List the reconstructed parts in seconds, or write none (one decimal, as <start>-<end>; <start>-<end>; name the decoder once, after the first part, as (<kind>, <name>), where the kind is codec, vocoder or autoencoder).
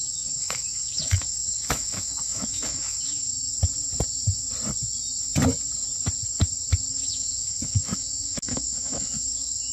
0.0-3.5 (autoencoder, DAC-VAE); 6.9-9.7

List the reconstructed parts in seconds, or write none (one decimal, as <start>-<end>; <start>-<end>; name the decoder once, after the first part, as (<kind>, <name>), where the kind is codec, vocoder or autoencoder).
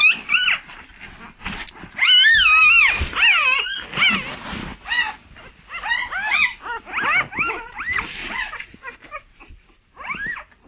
none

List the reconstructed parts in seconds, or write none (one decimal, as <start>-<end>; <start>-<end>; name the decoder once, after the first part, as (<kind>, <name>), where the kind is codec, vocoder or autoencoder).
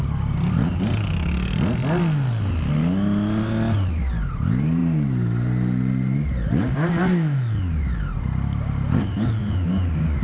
none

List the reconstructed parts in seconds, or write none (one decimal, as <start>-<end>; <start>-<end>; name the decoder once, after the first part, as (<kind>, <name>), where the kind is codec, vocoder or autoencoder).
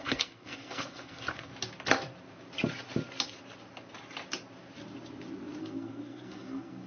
0.0-1.5 (codec, SNAC); 5.6-6.9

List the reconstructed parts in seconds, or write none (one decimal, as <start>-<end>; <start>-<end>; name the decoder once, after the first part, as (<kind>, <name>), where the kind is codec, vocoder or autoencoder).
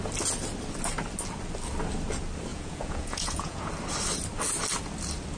2.5-3.7 (vocoder, Vocos)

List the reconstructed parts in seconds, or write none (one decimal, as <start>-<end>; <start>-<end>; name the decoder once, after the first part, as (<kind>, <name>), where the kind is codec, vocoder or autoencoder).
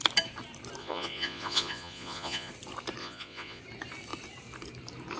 0.8-2.5 (vocoder, Vocos); 3.0-3.6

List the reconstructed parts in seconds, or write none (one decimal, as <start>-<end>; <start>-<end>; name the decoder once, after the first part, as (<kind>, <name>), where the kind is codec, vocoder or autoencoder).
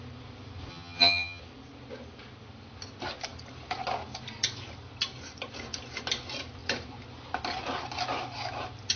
0.7-1.4 (vocoder, HiFi-GAN)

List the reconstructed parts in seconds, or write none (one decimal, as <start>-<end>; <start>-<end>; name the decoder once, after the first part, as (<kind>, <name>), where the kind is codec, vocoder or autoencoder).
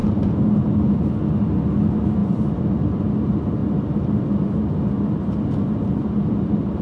2.2-3.1 (vocoder, BigVGAN v2)